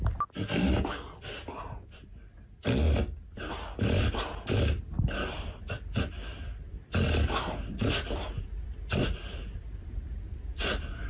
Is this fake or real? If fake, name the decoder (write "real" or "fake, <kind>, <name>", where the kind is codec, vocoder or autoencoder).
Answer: real